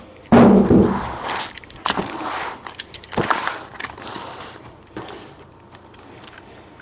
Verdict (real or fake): real